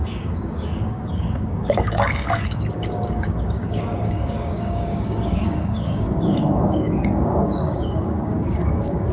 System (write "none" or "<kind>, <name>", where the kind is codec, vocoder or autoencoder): codec, DAC